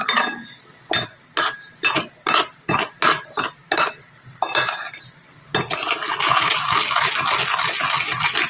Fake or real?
real